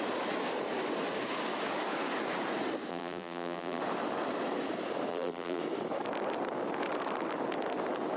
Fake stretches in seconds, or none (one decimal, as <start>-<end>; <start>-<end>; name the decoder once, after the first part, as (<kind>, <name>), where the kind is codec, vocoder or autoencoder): 2.9-3.8 (vocoder, BigVGAN v2); 5.1-5.6